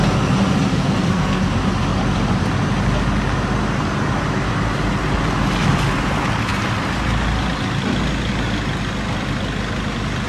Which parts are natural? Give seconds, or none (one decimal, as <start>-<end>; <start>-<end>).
0.0-0.7; 1.4-10.3